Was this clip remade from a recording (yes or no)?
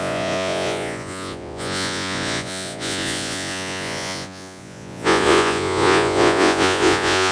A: yes